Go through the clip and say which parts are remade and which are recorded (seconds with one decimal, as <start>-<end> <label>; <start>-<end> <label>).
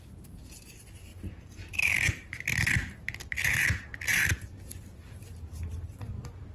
0.0-1.1 recorded; 1.1-2.4 remade; 2.4-6.5 recorded